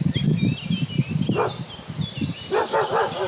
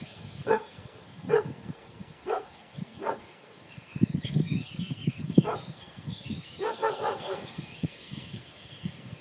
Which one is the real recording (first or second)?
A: first